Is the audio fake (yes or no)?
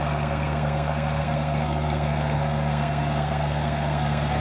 yes